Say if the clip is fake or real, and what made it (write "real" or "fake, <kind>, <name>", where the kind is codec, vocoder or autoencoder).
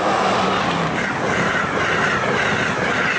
real